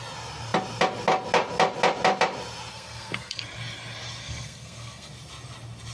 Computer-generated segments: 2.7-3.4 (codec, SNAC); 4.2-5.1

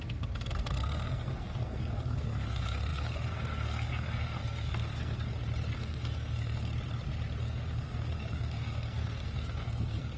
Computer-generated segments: 0.0-5.3 (codec, SNAC); 5.8-6.7; 7.4-10.2

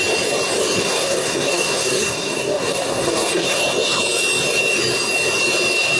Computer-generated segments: 0.8-3.6 (codec, SNAC)